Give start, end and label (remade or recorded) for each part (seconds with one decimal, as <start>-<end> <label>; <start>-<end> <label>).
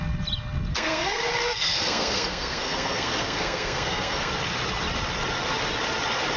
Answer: 0.0-0.7 recorded; 0.7-4.3 remade; 4.3-6.4 recorded